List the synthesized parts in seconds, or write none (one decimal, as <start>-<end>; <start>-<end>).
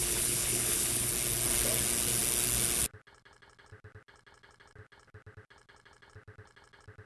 0.0-1.1